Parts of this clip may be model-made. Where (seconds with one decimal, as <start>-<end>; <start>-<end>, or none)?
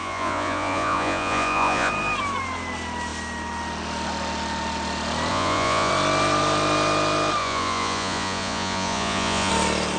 0.0-1.9; 5.3-5.9; 7.4-9.5